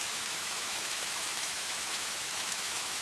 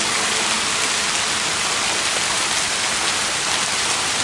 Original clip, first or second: second